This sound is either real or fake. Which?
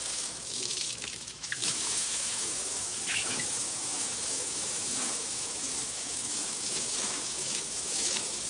fake